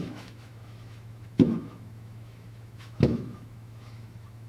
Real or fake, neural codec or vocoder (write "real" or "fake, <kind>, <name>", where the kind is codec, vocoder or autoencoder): fake, autoencoder, DAC-VAE